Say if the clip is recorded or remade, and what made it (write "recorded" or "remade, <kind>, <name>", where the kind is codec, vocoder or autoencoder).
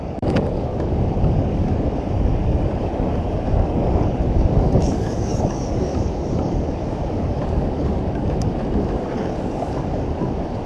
remade, codec, DAC